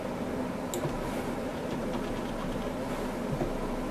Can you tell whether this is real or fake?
real